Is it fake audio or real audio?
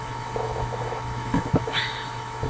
fake